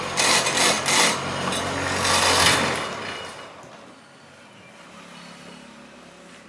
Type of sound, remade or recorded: recorded